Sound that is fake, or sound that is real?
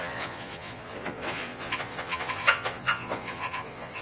fake